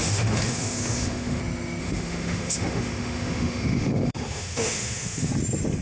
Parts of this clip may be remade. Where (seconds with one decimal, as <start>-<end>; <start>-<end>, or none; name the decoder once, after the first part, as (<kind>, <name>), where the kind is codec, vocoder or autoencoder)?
0.0-1.4 (autoencoder, DAC-VAE); 1.8-5.3